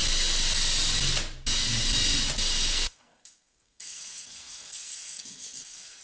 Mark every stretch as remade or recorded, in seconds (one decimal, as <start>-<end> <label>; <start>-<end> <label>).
0.0-2.7 recorded; 2.7-6.0 remade